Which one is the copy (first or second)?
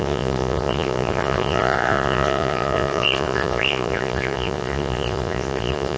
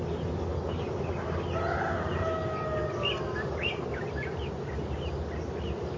first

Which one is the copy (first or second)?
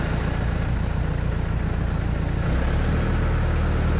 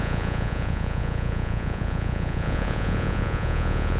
second